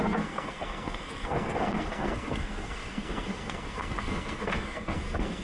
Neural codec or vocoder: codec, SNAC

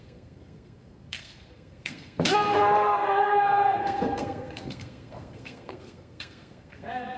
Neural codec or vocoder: codec, SNAC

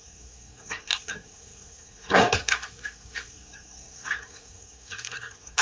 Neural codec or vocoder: codec, SNAC